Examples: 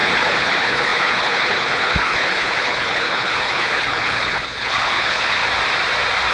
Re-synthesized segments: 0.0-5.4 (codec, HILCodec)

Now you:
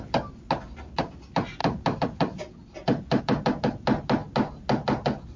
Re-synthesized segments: none